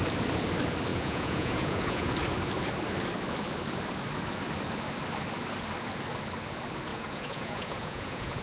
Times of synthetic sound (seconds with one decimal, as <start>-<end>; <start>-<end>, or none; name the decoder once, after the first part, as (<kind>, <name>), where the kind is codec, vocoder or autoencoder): 0.9-2.1 (vocoder, Vocos); 6.9-8.4